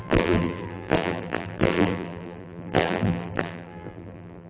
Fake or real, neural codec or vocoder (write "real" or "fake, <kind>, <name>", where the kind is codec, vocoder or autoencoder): fake, vocoder, BigVGAN v2